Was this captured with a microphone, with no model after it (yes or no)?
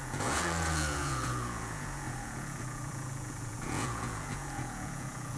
no